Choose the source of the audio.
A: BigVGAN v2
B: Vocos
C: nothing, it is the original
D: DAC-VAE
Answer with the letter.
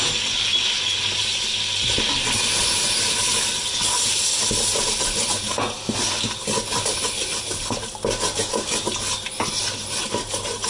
C